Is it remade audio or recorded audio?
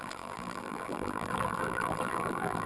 remade